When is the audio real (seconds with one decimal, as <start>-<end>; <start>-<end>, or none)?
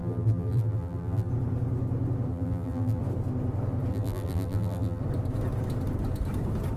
1.3-2.3; 3.0-3.9; 5.0-6.8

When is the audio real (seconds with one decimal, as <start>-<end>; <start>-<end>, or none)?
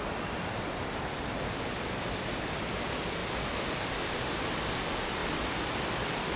0.0-6.4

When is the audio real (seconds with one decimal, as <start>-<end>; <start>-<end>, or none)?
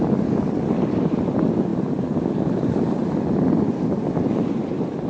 0.0-5.1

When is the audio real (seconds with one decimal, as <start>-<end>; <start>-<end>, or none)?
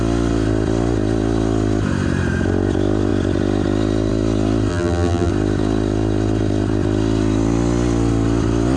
0.0-4.7; 5.3-8.8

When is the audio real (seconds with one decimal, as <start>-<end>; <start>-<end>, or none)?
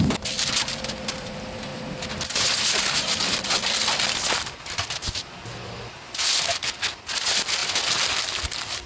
1.7-5.9; 7.6-8.4